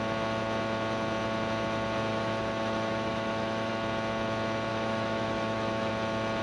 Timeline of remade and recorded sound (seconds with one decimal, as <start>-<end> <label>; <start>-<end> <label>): 0.0-2.1 recorded; 2.1-3.7 remade; 3.7-4.7 recorded; 4.7-5.9 remade; 5.9-6.4 recorded